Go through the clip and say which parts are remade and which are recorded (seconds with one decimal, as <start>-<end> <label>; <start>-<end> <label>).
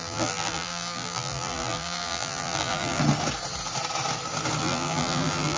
0.0-3.0 remade; 3.0-4.6 recorded; 4.6-5.6 remade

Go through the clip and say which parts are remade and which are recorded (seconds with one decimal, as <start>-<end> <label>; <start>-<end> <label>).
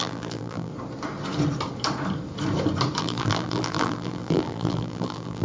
0.0-0.7 remade; 0.7-3.0 recorded; 3.0-5.4 remade